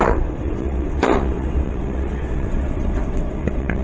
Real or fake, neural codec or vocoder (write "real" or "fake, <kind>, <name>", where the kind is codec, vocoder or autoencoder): fake, vocoder, WaveNeXt